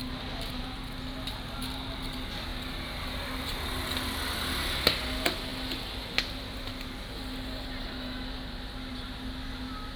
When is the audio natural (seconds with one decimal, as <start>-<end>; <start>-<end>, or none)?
0.0-2.5; 3.5-10.0